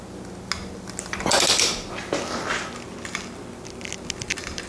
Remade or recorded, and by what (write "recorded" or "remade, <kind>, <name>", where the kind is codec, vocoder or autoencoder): recorded